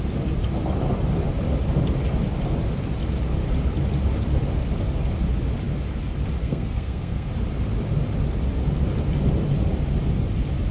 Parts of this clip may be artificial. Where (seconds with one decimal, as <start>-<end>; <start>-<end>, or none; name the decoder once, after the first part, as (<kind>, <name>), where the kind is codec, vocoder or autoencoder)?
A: 6.4-7.3 (codec, SNAC)